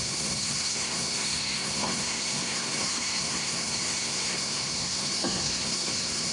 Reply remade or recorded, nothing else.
remade